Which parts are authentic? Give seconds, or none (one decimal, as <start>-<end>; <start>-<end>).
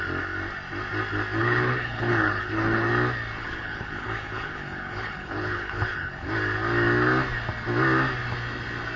0.0-1.4; 2.9-3.4; 6.3-9.0